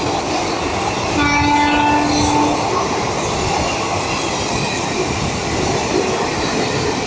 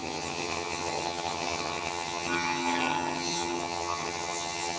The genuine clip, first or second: first